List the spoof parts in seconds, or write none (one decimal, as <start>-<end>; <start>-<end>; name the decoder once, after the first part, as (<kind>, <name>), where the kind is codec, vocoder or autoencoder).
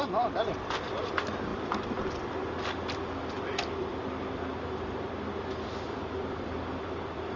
0.0-7.4 (vocoder, BigVGAN v2)